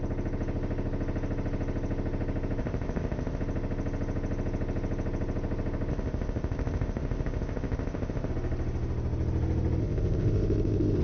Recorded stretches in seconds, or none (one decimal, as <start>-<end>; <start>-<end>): 0.0-2.6; 3.4-5.9; 8.3-9.8